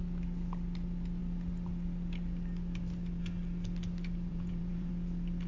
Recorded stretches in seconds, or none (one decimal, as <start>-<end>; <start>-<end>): 0.0-4.3; 4.9-5.5